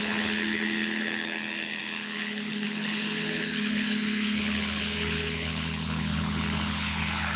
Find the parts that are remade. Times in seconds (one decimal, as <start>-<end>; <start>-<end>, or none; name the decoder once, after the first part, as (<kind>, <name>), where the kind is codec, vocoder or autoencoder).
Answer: 0.0-7.4 (codec, HILCodec)